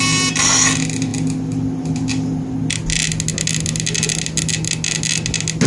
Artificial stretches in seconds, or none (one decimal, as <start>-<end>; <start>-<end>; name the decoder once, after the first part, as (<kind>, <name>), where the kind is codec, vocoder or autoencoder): none